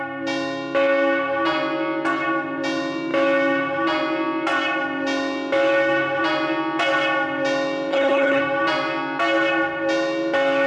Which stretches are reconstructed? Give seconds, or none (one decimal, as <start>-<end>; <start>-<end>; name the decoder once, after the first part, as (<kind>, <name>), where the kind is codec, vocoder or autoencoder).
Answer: 7.9-8.4 (codec, HILCodec)